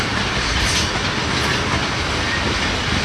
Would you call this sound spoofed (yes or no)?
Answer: no